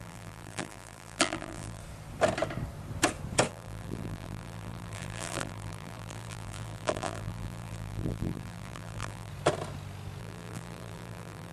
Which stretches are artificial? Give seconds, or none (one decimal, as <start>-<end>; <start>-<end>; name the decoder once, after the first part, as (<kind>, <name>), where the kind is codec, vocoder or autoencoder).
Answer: 0.0-1.8 (vocoder, BigVGAN v2); 3.5-9.3; 10.2-11.5